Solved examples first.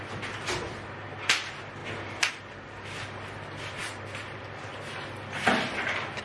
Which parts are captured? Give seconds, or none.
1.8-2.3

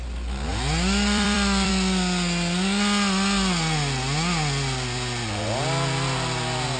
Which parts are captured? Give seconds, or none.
0.0-0.5; 1.7-6.8

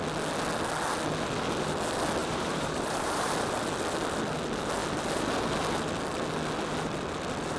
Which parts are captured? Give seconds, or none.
0.0-2.2; 3.3-7.6

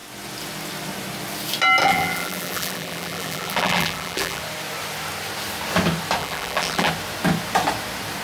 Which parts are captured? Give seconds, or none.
0.0-1.8; 4.4-6.2; 6.9-8.2

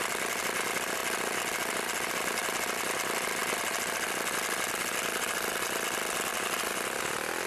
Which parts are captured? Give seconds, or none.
0.0-7.5

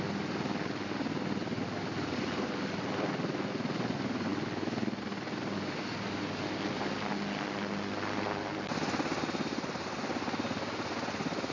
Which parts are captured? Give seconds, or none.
0.0-11.5